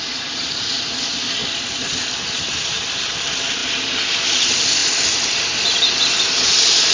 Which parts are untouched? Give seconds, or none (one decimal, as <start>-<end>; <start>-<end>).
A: 0.0-1.4; 3.1-3.6; 4.1-6.9